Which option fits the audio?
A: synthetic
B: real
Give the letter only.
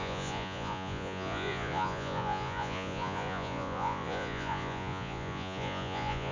A